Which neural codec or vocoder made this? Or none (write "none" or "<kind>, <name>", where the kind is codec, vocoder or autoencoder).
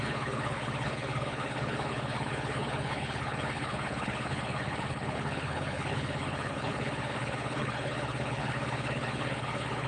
codec, HILCodec